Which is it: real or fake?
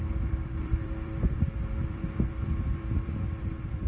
fake